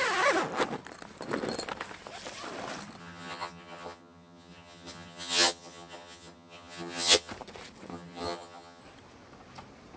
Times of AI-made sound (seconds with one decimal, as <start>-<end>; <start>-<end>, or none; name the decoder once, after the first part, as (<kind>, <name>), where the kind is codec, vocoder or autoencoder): 3.0-7.3 (vocoder, HiFi-GAN); 7.9-8.8